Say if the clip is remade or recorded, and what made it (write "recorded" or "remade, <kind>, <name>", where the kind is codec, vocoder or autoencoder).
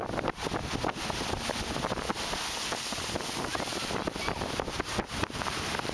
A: remade, vocoder, BigVGAN v2